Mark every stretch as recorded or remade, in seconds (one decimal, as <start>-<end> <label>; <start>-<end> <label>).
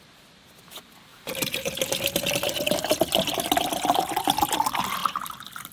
0.0-1.1 recorded; 1.1-1.9 remade; 1.9-5.0 recorded; 5.0-5.7 remade